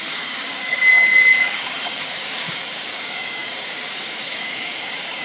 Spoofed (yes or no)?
yes